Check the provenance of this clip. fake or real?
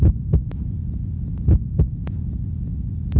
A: real